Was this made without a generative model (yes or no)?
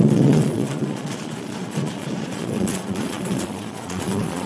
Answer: no